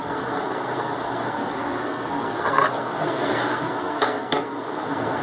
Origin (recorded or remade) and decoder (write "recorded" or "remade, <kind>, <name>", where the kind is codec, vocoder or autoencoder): remade, codec, SNAC